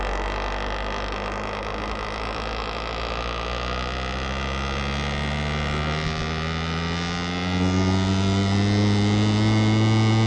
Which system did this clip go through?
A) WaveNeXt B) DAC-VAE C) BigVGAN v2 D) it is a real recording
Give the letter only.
D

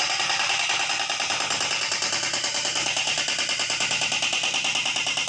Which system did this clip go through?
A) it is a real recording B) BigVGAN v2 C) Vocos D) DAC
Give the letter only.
A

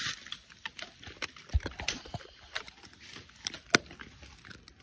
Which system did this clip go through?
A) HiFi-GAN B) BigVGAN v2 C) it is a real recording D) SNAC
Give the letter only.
C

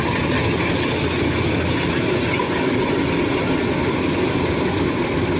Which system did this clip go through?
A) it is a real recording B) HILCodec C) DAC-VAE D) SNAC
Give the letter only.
A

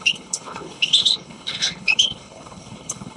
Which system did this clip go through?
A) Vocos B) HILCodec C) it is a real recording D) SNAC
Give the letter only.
B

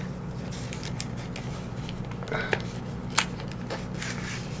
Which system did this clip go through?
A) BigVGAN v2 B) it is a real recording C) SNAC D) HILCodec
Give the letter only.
B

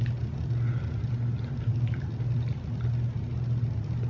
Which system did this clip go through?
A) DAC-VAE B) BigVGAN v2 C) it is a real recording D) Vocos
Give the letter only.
C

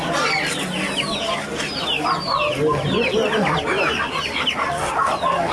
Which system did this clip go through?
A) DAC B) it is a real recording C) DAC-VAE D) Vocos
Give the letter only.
B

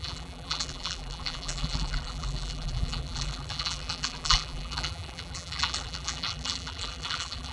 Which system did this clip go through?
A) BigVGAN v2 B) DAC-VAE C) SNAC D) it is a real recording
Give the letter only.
A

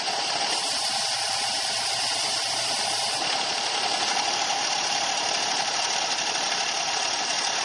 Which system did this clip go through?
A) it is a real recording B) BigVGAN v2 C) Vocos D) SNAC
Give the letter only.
B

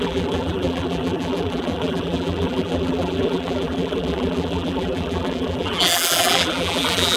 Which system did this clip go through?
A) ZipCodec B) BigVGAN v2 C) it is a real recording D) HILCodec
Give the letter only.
B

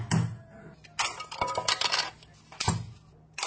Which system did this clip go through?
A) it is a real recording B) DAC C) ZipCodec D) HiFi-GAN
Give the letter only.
A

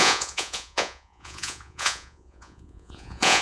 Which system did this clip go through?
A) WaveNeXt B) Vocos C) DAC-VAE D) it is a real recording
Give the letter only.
B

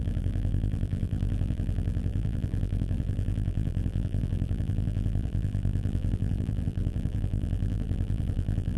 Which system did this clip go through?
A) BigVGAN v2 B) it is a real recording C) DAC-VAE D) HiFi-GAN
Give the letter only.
A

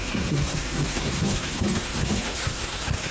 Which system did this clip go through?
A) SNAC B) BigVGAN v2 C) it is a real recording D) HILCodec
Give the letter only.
A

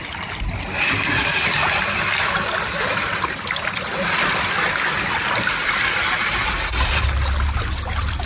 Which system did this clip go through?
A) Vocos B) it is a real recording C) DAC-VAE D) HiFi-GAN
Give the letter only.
B